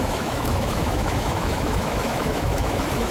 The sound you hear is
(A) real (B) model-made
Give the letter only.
B